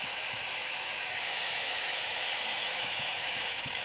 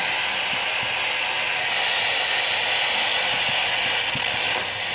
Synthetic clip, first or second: first